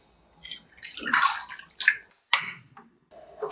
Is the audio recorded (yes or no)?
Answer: yes